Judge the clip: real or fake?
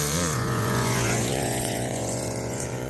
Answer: fake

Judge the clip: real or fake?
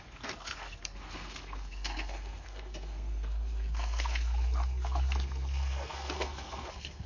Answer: fake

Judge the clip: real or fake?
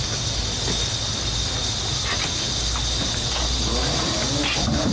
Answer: real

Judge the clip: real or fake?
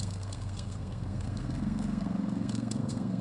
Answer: fake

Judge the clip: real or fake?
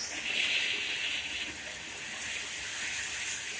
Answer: real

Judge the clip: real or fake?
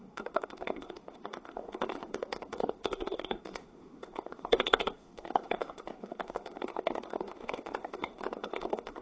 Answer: fake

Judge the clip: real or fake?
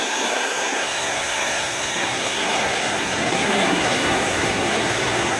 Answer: fake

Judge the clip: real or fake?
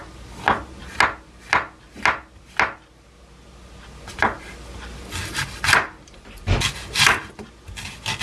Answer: real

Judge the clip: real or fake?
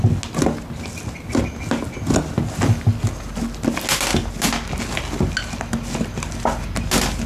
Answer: real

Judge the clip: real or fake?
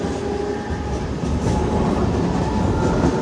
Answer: real